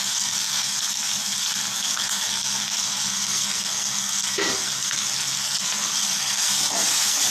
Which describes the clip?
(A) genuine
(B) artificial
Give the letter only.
B